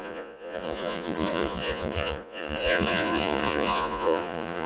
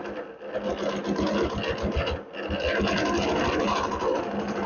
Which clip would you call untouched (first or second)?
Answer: second